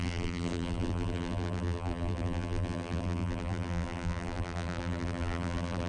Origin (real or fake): fake